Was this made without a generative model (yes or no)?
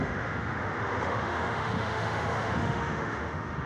no